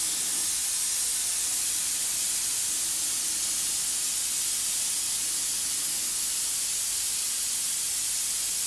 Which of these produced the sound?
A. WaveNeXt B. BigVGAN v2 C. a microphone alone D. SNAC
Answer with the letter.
C